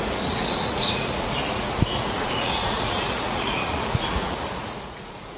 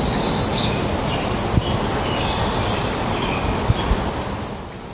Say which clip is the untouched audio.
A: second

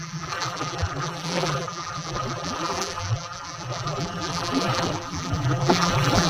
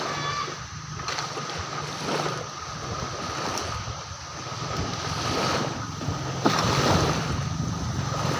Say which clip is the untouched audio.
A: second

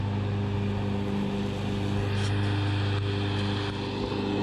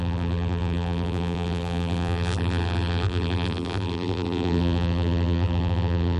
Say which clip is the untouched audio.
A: first